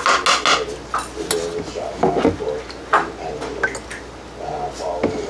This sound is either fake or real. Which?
real